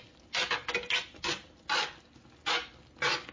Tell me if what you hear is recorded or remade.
recorded